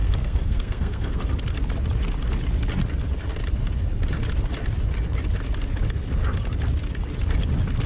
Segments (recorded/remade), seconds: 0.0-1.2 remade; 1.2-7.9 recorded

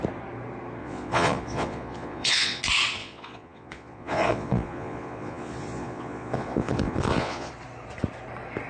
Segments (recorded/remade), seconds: 0.0-0.8 recorded; 0.8-2.6 remade; 2.6-3.0 recorded; 3.0-7.5 remade; 7.5-8.7 recorded

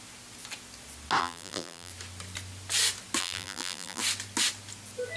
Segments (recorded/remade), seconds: 0.0-1.2 recorded; 1.2-1.9 remade; 1.9-3.2 recorded; 3.2-4.0 remade; 4.0-5.2 recorded

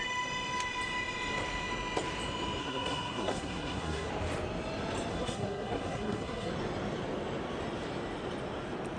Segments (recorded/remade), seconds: 0.0-2.6 recorded; 2.6-4.1 remade; 4.1-5.1 recorded; 5.1-6.5 remade; 6.5-9.0 recorded

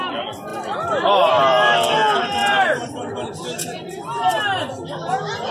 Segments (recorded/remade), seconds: 0.0-2.4 recorded; 2.4-4.4 remade; 4.4-5.5 recorded

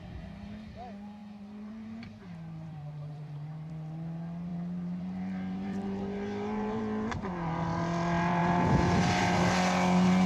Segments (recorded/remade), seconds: 0.0-1.2 recorded; 1.2-3.7 remade; 3.7-4.5 recorded; 4.5-6.8 remade; 6.8-10.3 recorded